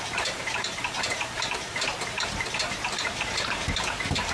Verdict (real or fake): fake